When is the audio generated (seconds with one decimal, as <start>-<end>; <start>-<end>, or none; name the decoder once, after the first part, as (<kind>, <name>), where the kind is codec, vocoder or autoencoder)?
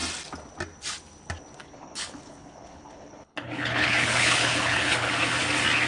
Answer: 1.6-5.1 (codec, HILCodec)